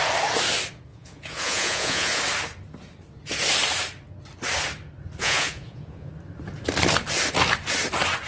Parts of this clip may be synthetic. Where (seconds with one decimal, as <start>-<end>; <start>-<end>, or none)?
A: 0.9-2.2; 5.2-6.1